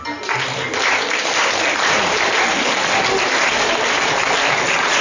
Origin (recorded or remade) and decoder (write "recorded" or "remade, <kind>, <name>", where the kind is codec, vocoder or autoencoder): recorded